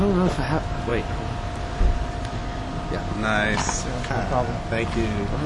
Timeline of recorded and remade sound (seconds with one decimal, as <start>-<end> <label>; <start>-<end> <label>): 0.0-5.5 recorded

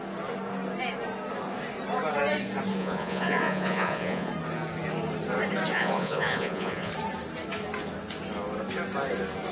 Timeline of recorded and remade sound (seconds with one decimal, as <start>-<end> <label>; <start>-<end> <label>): 0.0-2.8 recorded; 2.8-4.3 remade; 4.3-5.7 recorded; 5.7-6.9 remade; 6.9-9.5 recorded